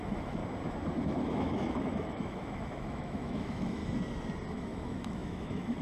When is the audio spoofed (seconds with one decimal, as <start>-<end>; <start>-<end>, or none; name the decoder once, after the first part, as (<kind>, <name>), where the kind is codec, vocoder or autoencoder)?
0.0-0.4 (autoencoder, DAC-VAE); 1.0-3.8; 4.5-5.8